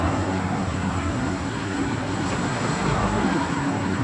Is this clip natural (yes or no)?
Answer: no